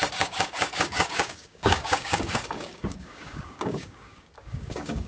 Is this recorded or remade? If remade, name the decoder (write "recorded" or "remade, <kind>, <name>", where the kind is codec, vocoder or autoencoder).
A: remade, codec, DAC